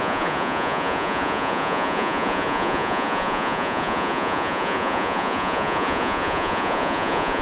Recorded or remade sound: remade